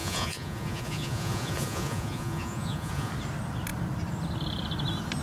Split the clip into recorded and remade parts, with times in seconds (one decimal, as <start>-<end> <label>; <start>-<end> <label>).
0.0-3.1 remade; 3.1-5.2 recorded